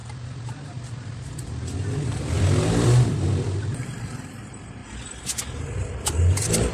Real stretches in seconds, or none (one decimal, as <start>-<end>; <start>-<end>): 4.0-4.8; 5.4-6.7